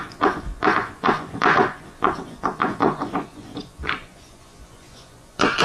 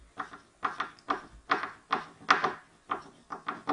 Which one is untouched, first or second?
second